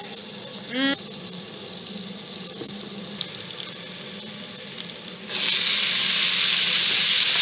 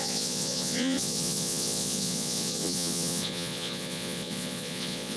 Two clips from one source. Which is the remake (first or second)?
second